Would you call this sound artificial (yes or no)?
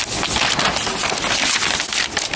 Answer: no